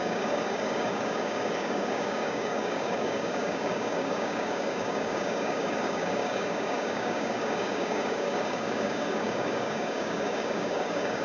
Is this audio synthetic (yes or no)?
yes